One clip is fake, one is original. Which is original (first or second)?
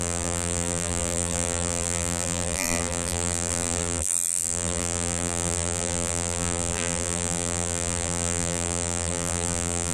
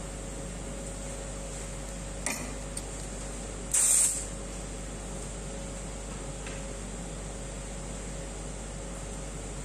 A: second